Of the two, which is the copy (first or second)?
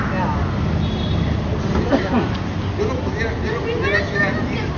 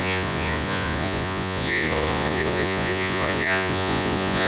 second